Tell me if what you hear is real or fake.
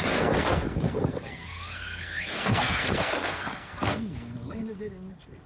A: fake